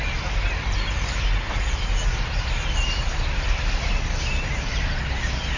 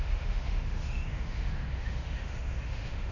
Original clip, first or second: first